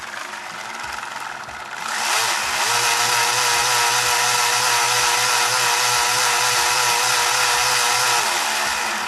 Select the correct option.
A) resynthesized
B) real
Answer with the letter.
B